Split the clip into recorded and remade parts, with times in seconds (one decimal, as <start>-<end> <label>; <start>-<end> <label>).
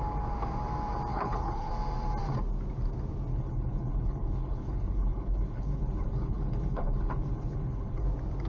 0.0-1.1 recorded; 1.1-1.7 remade; 1.7-3.3 recorded; 3.3-8.0 remade; 8.0-8.5 recorded